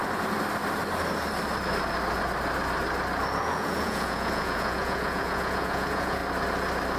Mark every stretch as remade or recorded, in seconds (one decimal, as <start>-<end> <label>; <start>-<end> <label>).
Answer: 0.0-3.4 recorded; 3.4-6.2 remade; 6.2-7.0 recorded